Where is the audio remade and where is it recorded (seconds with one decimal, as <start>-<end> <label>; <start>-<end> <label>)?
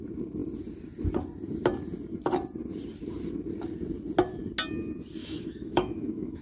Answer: 0.0-5.2 recorded; 5.2-6.4 remade